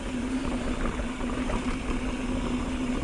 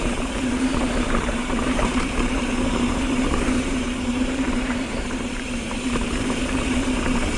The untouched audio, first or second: first